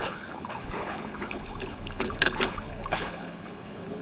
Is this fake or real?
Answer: fake